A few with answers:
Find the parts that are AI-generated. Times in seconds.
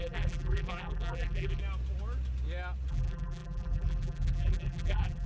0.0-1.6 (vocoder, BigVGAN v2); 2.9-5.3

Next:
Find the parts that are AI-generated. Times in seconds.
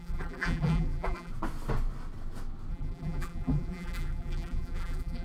0.0-1.3 (vocoder, BigVGAN v2); 2.7-5.2